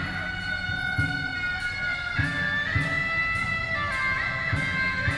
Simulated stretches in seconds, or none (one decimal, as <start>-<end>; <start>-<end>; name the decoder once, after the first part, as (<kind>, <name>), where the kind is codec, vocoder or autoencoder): none